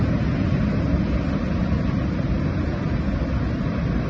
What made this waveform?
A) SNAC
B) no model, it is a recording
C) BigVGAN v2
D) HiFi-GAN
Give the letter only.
B